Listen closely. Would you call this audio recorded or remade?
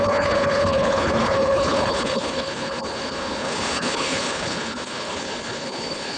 remade